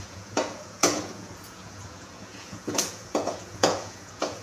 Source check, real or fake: fake